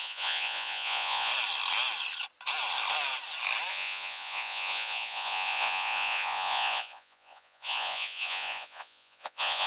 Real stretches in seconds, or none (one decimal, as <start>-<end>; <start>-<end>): 1.3-3.7